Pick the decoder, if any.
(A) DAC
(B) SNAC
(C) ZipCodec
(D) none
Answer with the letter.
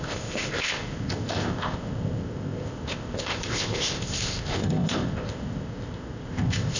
C